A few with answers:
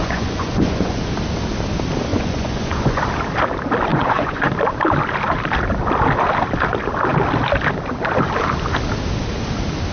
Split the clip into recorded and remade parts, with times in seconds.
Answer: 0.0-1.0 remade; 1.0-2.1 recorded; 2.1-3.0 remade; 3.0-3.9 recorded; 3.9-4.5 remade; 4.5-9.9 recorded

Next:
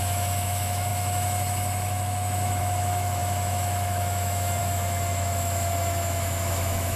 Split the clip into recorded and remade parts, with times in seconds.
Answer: 0.0-7.0 remade

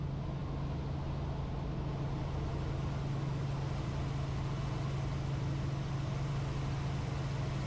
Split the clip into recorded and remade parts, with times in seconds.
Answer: 0.0-7.7 recorded

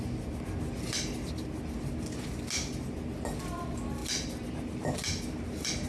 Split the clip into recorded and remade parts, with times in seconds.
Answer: 0.0-5.9 recorded

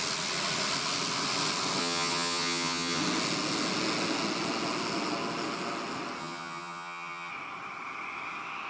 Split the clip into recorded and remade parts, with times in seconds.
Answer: 0.0-1.8 recorded; 1.8-3.0 remade; 3.0-6.2 recorded; 6.2-7.3 remade; 7.3-8.7 recorded

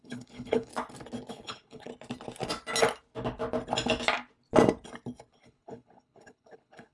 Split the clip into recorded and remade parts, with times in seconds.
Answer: 0.0-0.7 remade; 0.7-1.3 recorded; 1.3-1.9 remade; 1.9-5.3 recorded; 5.3-6.9 remade